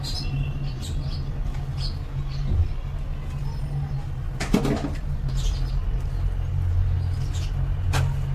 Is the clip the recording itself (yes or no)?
yes